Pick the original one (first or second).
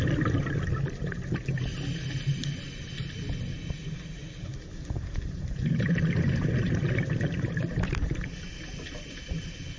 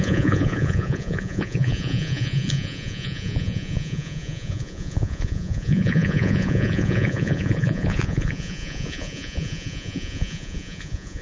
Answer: first